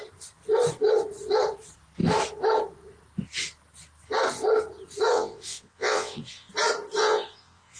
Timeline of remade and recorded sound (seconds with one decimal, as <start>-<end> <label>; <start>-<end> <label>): 0.0-5.1 recorded; 5.1-6.5 remade; 6.5-7.0 recorded; 7.0-7.8 remade